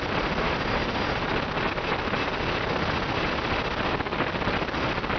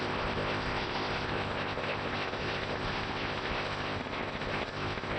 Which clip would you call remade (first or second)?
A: second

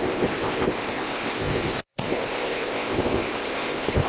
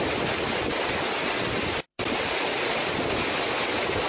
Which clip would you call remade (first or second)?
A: first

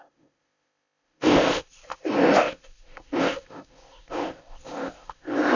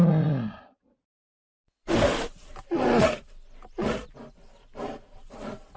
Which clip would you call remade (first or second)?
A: first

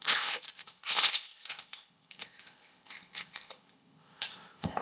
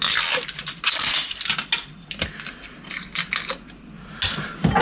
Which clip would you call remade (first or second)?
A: first